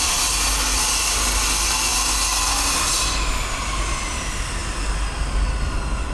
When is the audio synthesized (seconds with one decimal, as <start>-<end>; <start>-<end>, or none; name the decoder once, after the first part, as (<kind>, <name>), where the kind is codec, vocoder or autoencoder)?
none